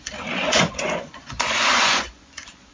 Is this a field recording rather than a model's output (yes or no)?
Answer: no